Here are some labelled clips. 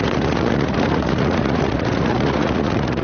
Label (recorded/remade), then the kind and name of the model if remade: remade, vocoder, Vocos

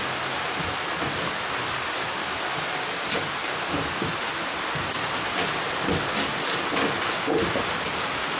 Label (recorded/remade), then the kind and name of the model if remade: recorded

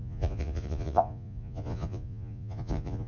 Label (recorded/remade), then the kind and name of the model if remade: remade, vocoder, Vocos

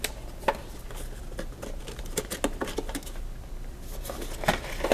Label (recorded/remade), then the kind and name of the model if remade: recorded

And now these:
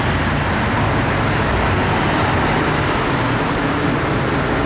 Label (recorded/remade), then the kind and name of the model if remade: recorded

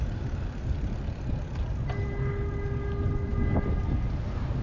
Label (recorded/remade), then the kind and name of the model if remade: recorded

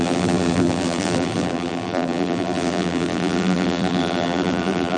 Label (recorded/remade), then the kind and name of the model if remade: remade, vocoder, BigVGAN v2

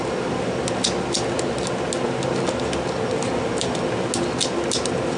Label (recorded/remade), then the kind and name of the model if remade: recorded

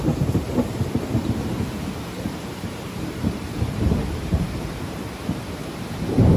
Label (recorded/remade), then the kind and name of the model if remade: remade, vocoder, BigVGAN v2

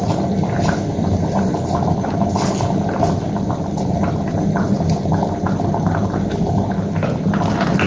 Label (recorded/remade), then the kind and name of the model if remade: recorded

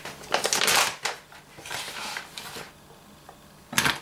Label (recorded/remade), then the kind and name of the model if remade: recorded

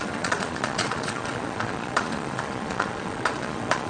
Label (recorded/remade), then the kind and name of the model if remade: remade, vocoder, Vocos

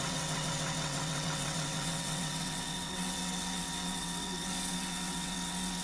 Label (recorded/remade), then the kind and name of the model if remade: remade, vocoder, WaveNeXt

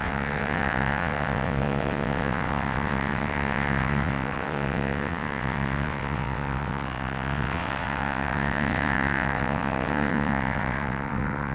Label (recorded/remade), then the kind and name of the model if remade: remade, vocoder, WaveNeXt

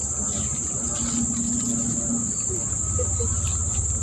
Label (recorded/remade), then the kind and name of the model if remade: recorded